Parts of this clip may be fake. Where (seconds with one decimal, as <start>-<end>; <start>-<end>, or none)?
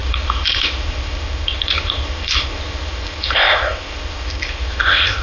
0.0-5.2